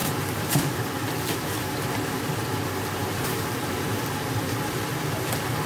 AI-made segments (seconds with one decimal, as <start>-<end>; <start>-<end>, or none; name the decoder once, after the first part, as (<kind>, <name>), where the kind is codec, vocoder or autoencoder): 0.0-0.9 (vocoder, BigVGAN v2); 3.0-4.8